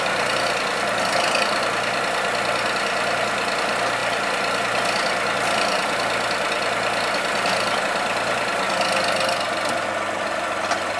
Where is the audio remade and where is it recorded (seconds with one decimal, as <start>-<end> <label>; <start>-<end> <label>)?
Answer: 0.0-11.0 recorded